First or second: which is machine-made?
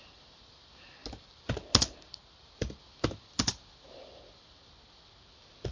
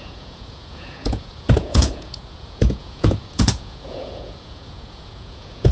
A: second